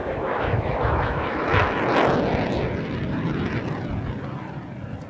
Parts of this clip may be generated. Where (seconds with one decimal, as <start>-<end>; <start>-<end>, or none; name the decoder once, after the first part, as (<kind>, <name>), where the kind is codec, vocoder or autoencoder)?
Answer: 0.0-1.8 (autoencoder, DAC-VAE)